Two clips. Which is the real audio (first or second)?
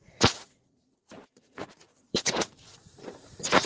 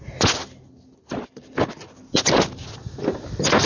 second